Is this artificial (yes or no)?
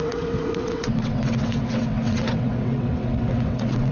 yes